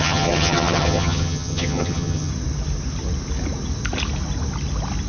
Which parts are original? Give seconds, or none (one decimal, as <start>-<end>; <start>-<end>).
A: 2.3-5.1